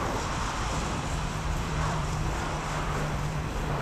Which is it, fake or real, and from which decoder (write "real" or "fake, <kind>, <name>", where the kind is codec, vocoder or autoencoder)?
fake, vocoder, BigVGAN v2